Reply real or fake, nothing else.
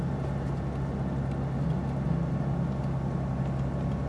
real